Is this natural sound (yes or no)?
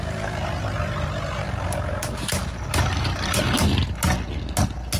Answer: yes